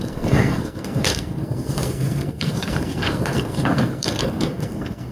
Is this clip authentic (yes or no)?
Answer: no